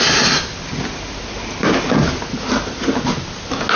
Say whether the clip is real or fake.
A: real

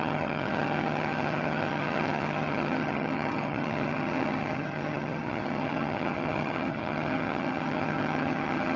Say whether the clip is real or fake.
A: fake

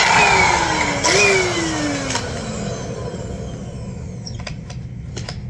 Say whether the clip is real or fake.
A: real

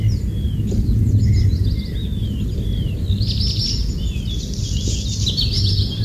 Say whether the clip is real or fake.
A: real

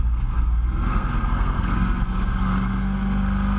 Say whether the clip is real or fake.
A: fake